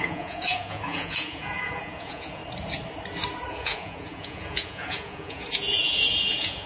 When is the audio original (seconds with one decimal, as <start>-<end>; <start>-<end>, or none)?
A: 2.4-3.5